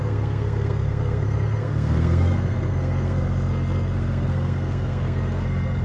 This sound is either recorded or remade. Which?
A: remade